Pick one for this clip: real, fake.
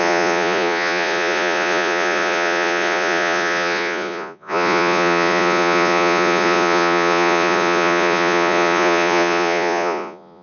fake